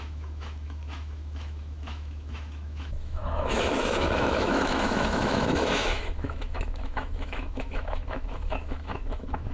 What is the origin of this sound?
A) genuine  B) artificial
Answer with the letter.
B